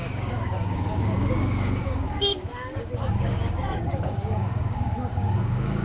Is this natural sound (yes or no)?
no